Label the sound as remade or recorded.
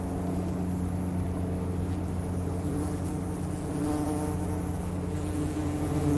recorded